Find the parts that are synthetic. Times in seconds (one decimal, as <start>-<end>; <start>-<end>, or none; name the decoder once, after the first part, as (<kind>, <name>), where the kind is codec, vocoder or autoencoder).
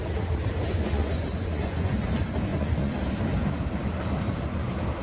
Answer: 0.7-1.9 (vocoder, Vocos); 2.5-3.0